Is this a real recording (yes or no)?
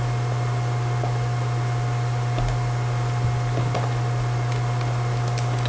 yes